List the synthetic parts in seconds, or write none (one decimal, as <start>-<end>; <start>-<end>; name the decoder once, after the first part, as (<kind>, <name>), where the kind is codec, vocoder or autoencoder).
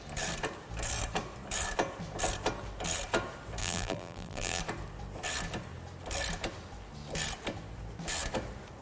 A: 3.6-4.6 (vocoder, BigVGAN v2)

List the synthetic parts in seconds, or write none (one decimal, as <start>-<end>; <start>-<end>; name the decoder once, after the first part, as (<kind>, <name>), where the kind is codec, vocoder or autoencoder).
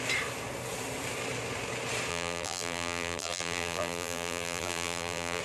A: 2.1-5.4 (vocoder, BigVGAN v2)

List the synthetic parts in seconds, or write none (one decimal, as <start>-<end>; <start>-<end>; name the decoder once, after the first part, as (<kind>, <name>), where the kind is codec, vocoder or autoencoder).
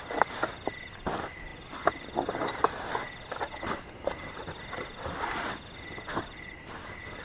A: none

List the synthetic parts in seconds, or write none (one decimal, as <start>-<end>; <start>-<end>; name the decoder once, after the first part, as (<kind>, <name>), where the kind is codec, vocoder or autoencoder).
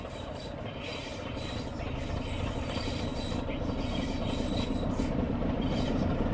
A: 0.0-1.0 (vocoder, BigVGAN v2); 2.4-3.1; 4.9-6.3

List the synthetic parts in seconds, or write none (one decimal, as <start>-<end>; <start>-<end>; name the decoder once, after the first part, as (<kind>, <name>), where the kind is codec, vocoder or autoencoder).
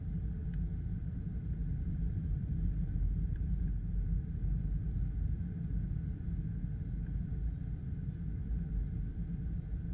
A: 0.9-3.7 (vocoder, BigVGAN v2)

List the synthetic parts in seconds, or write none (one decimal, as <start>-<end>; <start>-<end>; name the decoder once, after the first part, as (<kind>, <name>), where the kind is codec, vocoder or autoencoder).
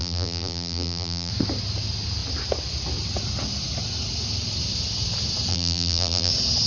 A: 0.0-1.3 (vocoder, BigVGAN v2); 5.5-6.3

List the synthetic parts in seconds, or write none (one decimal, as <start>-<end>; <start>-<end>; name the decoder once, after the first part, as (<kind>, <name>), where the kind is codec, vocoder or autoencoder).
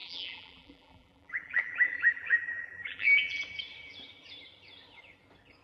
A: 0.0-3.4 (vocoder, BigVGAN v2)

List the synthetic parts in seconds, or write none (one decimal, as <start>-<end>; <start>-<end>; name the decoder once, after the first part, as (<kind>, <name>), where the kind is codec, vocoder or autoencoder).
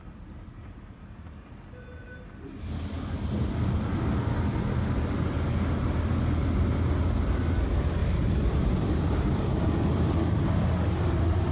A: 8.0-10.0 (vocoder, BigVGAN v2)